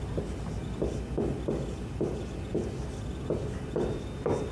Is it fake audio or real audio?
real